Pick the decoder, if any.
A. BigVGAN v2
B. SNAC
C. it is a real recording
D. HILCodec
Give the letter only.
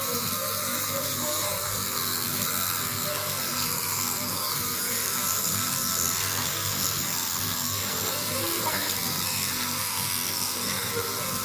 B